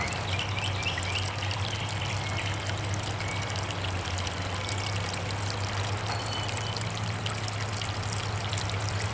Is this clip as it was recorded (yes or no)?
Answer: yes